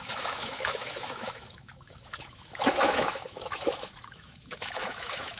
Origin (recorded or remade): remade